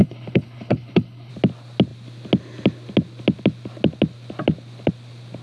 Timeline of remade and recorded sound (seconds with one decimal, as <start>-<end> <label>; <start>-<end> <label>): 0.0-1.3 remade; 1.3-5.4 recorded